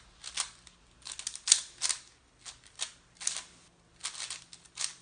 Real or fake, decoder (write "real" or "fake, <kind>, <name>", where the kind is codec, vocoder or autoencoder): real